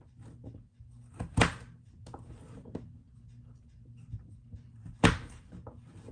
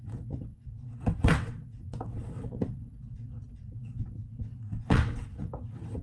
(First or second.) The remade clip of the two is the second